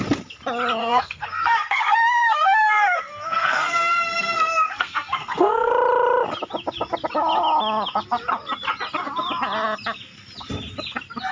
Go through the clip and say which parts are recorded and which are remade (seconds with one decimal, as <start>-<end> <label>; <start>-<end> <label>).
0.0-0.8 recorded; 0.8-5.7 remade; 5.7-11.3 recorded

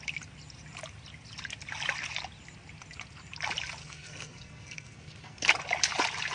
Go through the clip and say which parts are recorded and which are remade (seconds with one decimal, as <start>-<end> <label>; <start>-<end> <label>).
0.0-3.8 recorded; 3.8-5.5 remade; 5.5-6.3 recorded

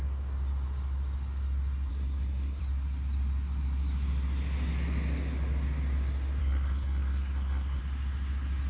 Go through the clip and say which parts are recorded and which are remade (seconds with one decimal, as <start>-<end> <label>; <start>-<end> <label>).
0.0-1.9 recorded; 1.9-2.6 remade; 2.6-6.4 recorded; 6.4-7.8 remade; 7.8-8.7 recorded

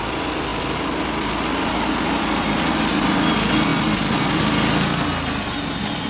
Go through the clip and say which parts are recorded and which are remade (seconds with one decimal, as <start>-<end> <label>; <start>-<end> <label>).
0.0-6.1 recorded

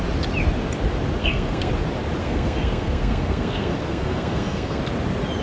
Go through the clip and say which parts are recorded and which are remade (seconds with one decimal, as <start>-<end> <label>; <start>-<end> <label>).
0.0-1.2 recorded; 1.2-1.7 remade; 1.7-2.2 recorded; 2.2-4.8 remade; 4.8-5.4 recorded